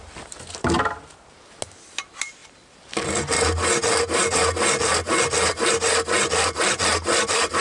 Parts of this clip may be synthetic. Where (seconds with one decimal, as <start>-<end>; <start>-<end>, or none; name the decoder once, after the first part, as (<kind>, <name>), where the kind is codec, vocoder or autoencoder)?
2.4-3.2 (vocoder, BigVGAN v2)